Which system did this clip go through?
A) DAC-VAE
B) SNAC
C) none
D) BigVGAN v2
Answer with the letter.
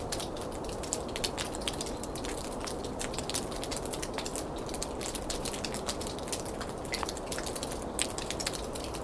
C